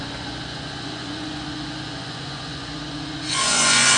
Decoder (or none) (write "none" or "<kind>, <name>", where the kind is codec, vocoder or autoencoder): vocoder, Vocos